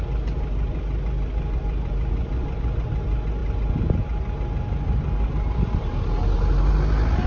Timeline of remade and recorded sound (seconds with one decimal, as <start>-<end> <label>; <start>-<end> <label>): 0.0-7.3 recorded